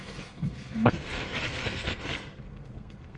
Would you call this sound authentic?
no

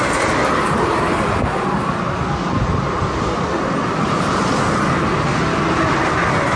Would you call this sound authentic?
yes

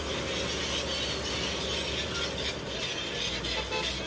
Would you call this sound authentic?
yes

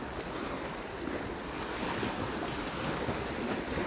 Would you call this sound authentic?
yes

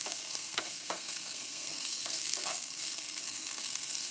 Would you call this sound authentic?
no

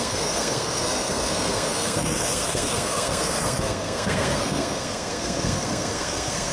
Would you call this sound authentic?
no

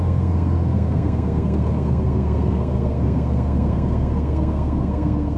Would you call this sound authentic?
no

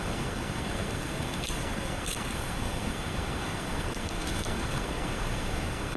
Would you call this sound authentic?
no